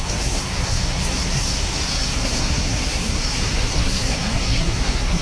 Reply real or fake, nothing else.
fake